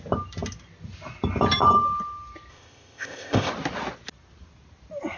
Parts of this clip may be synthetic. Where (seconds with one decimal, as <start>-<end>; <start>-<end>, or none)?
2.5-3.5